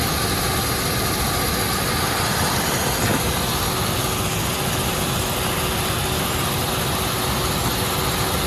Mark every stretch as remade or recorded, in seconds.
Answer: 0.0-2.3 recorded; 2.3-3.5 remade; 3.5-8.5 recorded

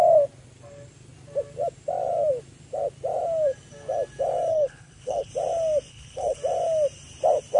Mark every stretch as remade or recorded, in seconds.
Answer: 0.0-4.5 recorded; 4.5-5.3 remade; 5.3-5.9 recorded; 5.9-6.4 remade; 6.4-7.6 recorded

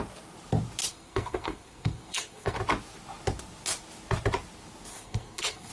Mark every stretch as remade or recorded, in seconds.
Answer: 0.0-0.9 recorded; 0.9-2.6 remade; 2.6-4.9 recorded; 4.9-5.7 remade